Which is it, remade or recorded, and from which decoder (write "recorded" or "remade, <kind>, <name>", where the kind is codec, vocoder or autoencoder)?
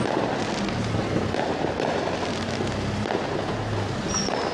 recorded